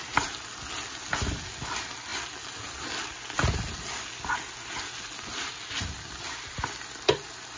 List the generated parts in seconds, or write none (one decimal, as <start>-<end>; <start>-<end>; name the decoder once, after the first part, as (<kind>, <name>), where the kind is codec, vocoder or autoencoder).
none